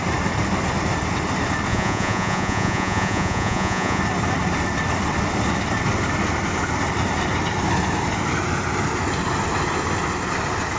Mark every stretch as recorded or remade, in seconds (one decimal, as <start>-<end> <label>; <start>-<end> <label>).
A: 0.0-1.7 recorded; 1.7-4.0 remade; 4.0-10.8 recorded